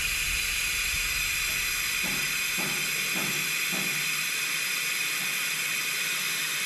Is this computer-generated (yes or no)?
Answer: no